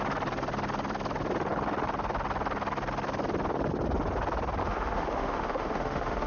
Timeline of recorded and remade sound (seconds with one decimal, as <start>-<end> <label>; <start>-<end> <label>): 0.0-4.6 recorded; 4.6-6.3 remade